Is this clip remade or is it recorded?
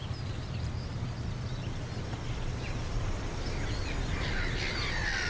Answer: recorded